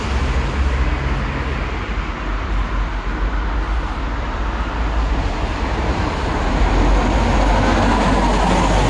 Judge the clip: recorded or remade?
recorded